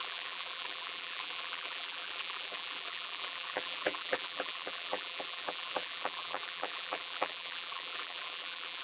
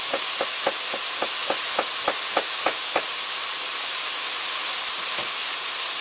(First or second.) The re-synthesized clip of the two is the first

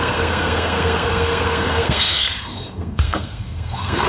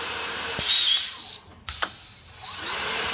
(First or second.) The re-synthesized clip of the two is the first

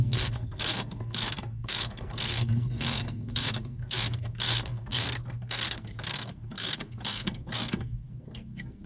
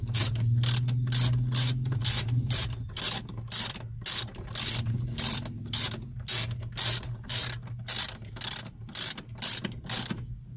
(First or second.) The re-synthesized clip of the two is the first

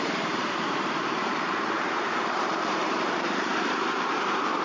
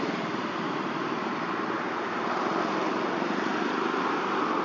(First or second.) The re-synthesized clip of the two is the first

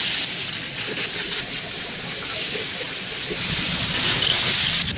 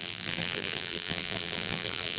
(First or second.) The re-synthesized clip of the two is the second